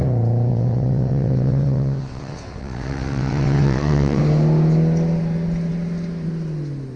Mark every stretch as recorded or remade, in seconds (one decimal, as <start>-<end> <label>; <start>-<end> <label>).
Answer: 0.0-0.5 recorded; 0.5-4.2 remade; 4.2-7.0 recorded